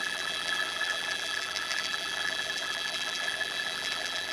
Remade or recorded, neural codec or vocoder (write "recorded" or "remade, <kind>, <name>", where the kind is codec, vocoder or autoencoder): remade, vocoder, BigVGAN v2